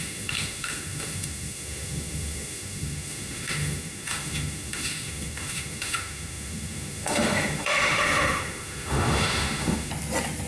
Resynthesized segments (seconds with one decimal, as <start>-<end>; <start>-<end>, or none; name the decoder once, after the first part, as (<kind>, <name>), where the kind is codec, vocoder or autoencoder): 0.0-9.9 (autoencoder, DAC-VAE)